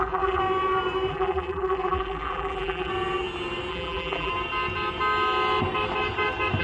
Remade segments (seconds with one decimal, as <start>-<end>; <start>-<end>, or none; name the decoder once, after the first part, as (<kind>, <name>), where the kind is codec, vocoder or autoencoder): 0.0-0.4 (vocoder, BigVGAN v2); 1.1-2.9; 3.7-4.3